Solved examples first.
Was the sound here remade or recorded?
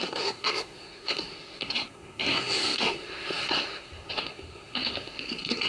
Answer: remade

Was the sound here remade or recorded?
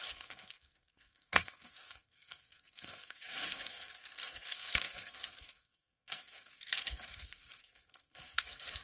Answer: remade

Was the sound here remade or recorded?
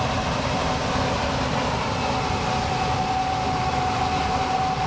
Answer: recorded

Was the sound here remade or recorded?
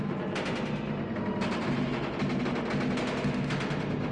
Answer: recorded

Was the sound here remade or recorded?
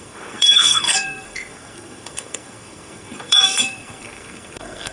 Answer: remade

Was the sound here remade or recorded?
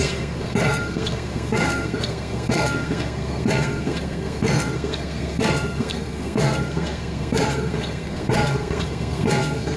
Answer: remade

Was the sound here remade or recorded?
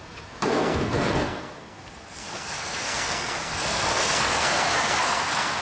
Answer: remade